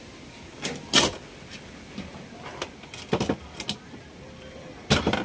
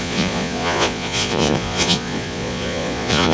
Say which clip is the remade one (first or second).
second